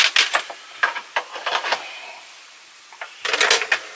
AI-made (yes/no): no